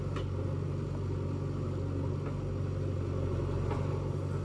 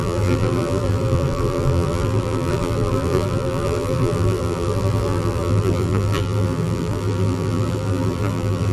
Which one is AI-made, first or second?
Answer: second